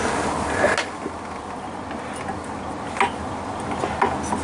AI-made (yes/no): no